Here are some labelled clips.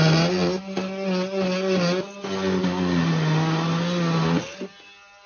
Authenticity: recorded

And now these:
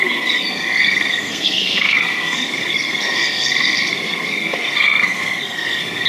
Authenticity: remade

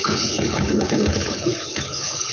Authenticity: remade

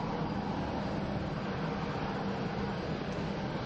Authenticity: recorded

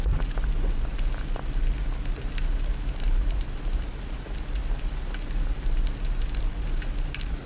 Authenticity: recorded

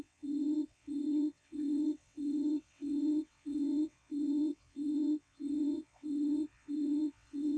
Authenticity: remade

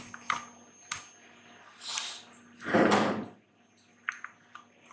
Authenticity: recorded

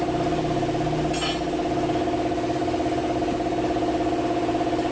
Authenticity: recorded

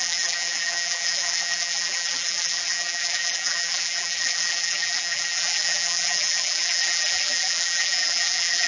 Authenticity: remade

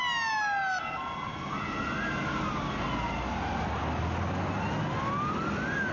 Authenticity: recorded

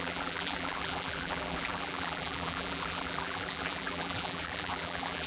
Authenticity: remade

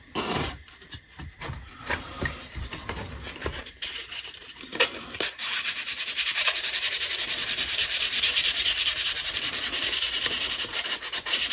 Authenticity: remade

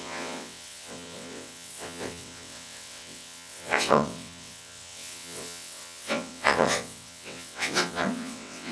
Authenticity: remade